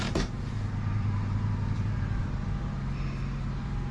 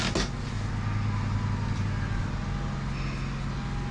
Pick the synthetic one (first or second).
first